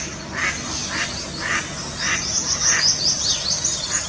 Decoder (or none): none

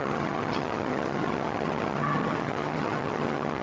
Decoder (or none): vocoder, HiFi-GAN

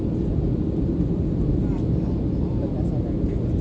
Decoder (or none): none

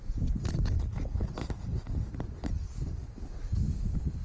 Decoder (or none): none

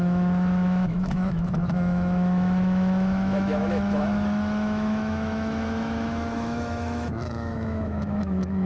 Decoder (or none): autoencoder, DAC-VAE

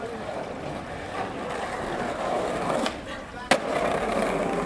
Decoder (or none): none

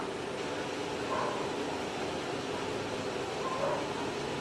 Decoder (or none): none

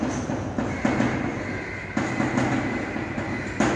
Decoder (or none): none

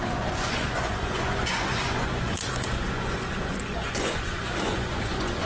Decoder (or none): vocoder, Vocos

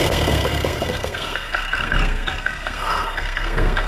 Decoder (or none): codec, SNAC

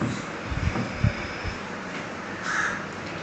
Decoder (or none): none